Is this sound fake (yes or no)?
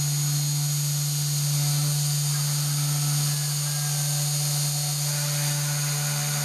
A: no